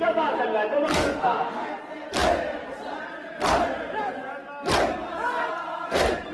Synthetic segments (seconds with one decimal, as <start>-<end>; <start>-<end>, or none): 0.9-1.7